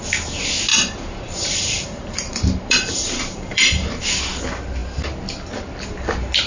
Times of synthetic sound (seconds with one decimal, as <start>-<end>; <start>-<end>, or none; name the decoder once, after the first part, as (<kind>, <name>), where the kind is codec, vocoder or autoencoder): 0.7-4.0 (vocoder, BigVGAN v2)